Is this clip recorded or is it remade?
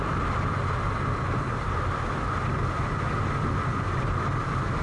recorded